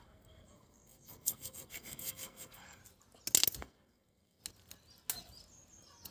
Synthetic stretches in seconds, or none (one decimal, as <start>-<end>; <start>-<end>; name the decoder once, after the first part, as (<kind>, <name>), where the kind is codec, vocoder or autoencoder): 0.0-2.8 (codec, SNAC); 3.6-4.4